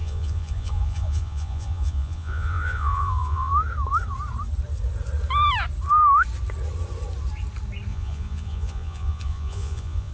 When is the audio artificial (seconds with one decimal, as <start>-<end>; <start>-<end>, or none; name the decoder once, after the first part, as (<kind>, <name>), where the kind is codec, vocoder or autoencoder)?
0.0-3.5 (vocoder, Vocos); 7.9-10.1